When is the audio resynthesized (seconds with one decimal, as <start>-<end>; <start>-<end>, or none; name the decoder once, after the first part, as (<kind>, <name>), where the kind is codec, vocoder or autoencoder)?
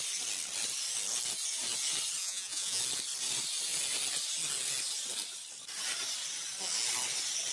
2.2-2.8 (vocoder, Vocos)